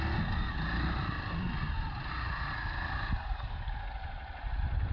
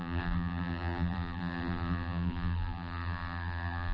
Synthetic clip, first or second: second